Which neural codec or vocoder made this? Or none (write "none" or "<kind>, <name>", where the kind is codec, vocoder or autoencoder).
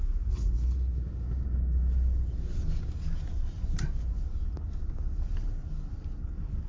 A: none